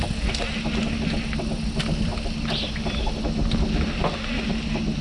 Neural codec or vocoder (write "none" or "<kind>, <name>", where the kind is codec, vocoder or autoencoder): none